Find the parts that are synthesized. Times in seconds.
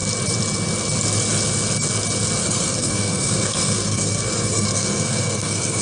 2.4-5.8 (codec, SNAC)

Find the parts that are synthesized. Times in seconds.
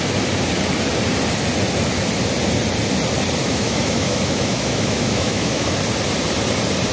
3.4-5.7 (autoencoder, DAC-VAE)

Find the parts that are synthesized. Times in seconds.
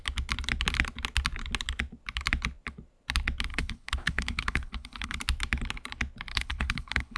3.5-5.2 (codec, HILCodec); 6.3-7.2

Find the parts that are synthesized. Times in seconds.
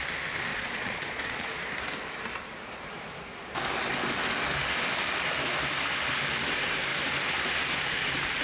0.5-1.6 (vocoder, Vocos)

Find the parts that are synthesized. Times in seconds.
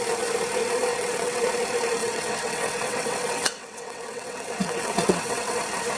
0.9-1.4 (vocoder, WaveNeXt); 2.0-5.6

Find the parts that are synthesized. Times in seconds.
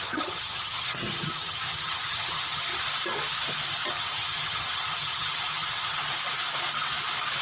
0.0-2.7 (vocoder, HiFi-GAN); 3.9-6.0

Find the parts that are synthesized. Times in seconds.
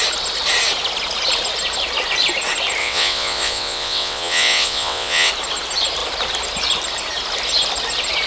2.8-5.3 (vocoder, WaveNeXt)